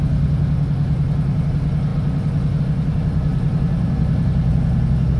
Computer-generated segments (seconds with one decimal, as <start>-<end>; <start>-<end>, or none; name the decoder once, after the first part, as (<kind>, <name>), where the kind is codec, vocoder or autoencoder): 0.8-1.4 (vocoder, BigVGAN v2); 3.3-4.8